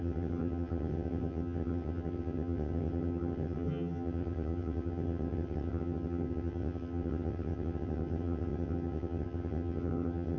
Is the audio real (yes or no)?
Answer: no